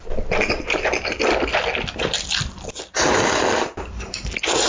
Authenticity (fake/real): real